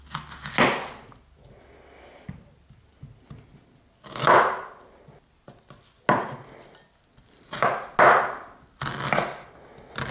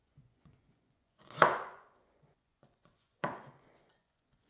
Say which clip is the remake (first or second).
second